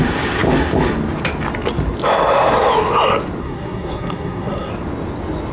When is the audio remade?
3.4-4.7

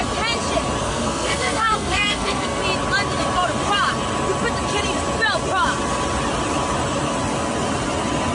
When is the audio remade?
0.8-2.6